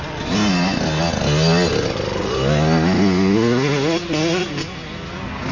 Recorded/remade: recorded